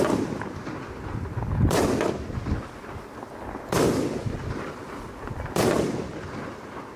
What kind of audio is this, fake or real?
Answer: real